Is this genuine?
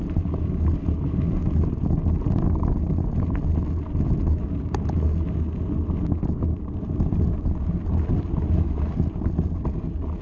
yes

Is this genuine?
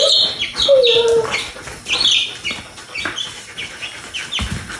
yes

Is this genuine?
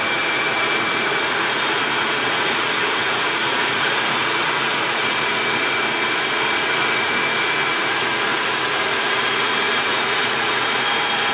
no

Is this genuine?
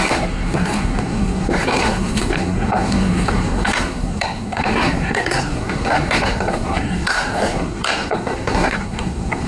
no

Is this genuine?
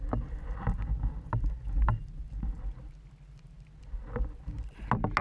yes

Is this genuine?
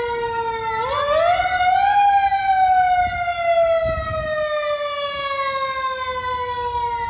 yes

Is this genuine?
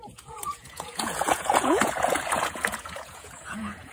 no